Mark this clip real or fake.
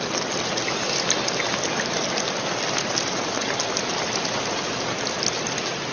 real